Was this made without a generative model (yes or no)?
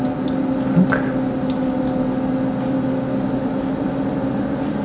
yes